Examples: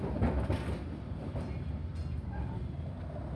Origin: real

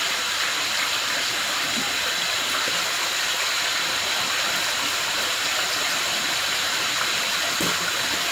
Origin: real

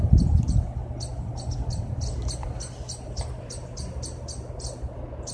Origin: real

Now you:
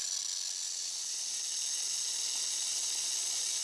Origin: real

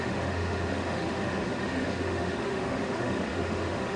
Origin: fake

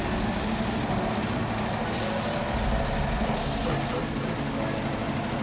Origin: real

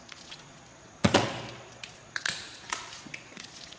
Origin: fake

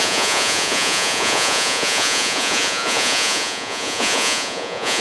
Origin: fake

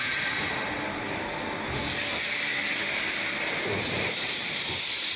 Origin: real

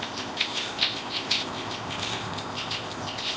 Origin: fake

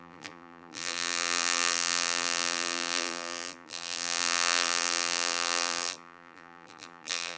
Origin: fake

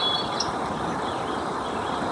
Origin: real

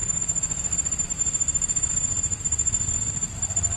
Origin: fake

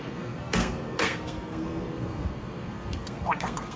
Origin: fake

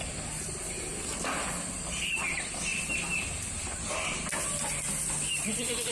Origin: real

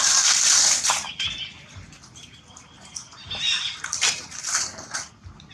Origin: real